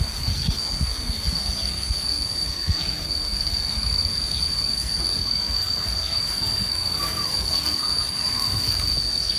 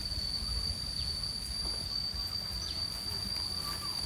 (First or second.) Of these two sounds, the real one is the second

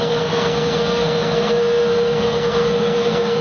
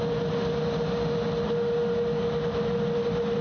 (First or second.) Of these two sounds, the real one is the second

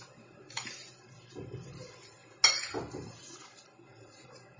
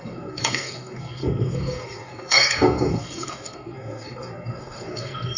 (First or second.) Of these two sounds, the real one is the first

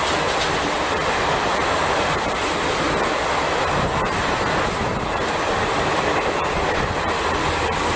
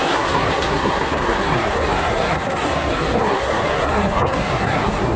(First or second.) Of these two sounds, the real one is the first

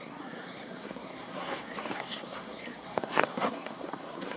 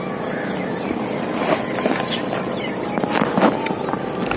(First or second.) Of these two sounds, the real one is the second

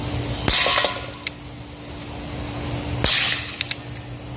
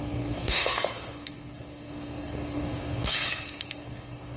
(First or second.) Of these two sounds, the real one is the first